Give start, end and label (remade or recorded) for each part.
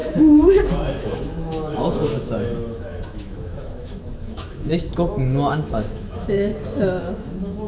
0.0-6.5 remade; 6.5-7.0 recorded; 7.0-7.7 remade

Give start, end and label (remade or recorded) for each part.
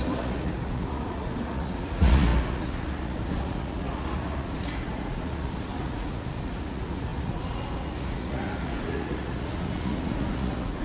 0.0-10.8 remade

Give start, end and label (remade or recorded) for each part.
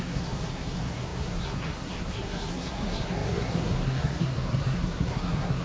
0.0-5.6 remade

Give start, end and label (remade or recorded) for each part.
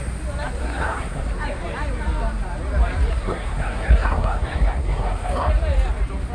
0.0-0.6 recorded; 0.6-1.3 remade; 1.3-3.1 recorded; 3.1-5.5 remade; 5.5-6.3 recorded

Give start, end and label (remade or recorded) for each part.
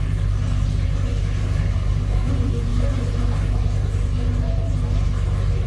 0.0-1.1 recorded; 1.1-2.3 remade; 2.3-5.7 recorded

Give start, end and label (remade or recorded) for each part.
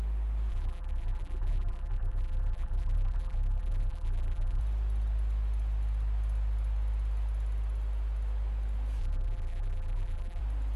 0.0-0.5 recorded; 0.5-4.6 remade; 4.6-9.0 recorded; 9.0-10.4 remade; 10.4-10.8 recorded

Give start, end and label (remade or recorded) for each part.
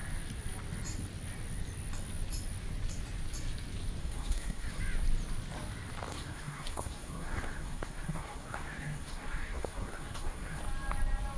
0.0-4.0 recorded; 4.0-4.8 remade; 4.8-6.1 recorded; 6.1-10.6 remade; 10.6-11.4 recorded